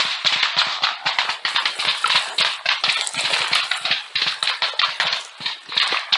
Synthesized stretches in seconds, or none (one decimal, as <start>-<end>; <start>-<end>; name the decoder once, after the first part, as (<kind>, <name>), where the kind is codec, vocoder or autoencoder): none